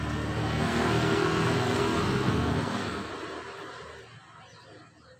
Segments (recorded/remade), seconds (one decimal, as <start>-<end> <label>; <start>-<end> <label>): 0.0-0.4 recorded; 0.4-3.1 remade; 3.1-5.2 recorded